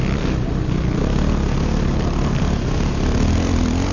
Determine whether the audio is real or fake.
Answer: real